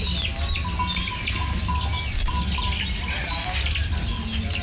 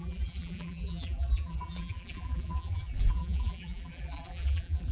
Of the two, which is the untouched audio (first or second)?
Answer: first